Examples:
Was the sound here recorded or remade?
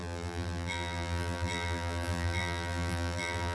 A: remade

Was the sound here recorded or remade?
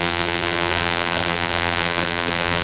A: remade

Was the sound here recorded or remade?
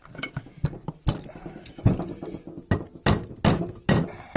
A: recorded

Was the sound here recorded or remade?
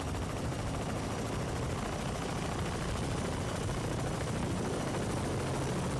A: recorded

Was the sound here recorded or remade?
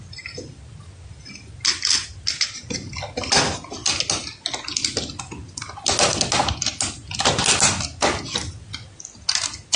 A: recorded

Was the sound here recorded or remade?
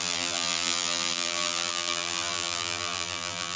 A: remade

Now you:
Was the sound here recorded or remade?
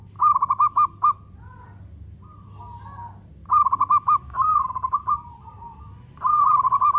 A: remade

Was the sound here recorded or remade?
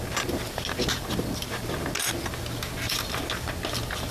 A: recorded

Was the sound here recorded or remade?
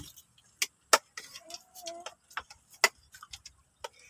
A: recorded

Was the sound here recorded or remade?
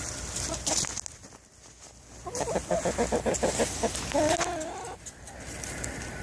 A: recorded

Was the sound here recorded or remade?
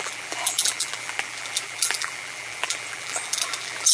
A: remade